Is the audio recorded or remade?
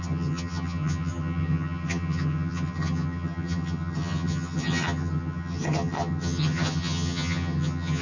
remade